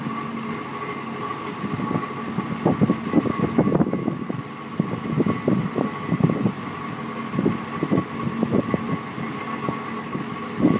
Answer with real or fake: real